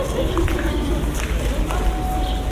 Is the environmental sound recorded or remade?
recorded